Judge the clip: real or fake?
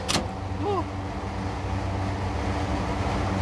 real